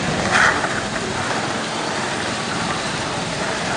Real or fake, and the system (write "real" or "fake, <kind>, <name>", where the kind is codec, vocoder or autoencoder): real